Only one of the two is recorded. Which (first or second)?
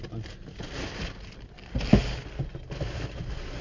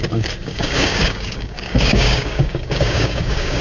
first